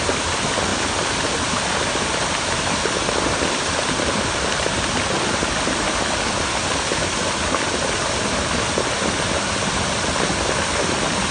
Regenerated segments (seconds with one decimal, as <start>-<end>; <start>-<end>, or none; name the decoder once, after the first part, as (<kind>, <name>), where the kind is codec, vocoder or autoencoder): 0.7-3.7 (vocoder, BigVGAN v2)